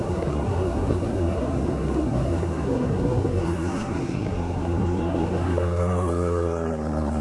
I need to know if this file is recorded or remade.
remade